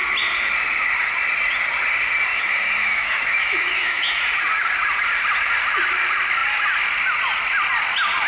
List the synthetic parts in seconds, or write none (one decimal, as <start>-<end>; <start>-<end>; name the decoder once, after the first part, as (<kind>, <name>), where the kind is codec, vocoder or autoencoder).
2.3-4.2 (autoencoder, DAC-VAE)